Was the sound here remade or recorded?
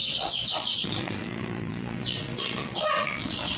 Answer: remade